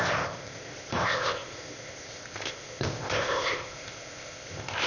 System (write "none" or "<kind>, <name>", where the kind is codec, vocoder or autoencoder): codec, ZipCodec